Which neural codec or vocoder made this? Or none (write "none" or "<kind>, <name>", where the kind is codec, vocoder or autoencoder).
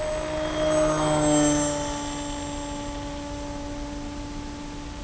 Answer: none